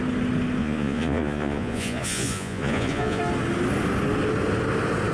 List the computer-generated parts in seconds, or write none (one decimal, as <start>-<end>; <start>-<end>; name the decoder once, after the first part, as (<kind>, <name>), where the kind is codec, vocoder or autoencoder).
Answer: 0.6-3.2 (vocoder, Vocos)